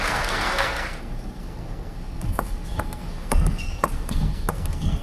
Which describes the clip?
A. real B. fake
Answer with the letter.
B